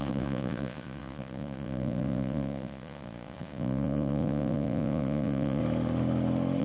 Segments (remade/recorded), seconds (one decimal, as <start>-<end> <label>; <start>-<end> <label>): 0.0-5.6 remade; 5.6-6.6 recorded